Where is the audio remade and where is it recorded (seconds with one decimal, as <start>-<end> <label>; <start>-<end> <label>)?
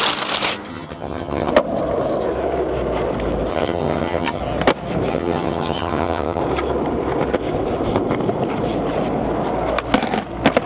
0.0-0.7 recorded; 0.7-1.5 remade; 1.5-3.5 recorded; 3.5-4.4 remade; 4.4-5.1 recorded; 5.1-6.4 remade; 6.4-10.7 recorded